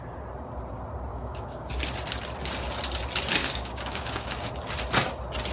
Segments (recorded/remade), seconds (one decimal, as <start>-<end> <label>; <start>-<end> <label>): 0.0-1.1 recorded; 1.1-1.7 remade; 1.7-3.4 recorded; 3.4-4.5 remade; 4.5-5.5 recorded